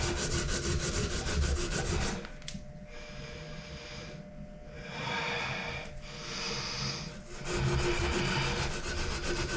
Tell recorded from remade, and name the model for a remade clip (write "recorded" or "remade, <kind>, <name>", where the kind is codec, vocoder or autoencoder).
recorded